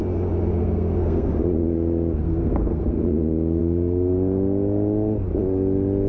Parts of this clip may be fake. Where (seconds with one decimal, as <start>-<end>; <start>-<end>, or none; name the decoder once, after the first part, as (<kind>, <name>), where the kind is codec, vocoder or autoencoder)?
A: 0.6-1.3 (codec, SNAC); 2.2-3.0